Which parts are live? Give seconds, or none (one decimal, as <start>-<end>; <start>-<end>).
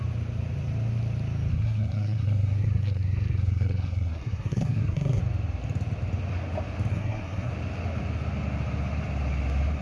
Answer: 0.0-1.5; 5.2-6.9; 7.5-9.8